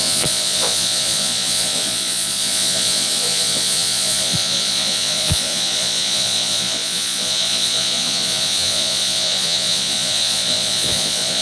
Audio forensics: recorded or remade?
remade